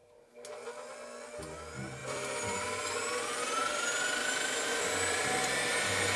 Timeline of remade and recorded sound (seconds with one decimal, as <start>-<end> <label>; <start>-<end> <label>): 0.0-2.0 recorded; 2.0-5.7 remade; 5.7-6.2 recorded